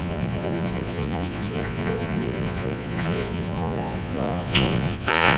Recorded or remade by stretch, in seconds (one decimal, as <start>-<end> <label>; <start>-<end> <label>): 0.0-5.4 remade